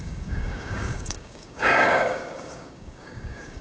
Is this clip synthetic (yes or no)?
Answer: yes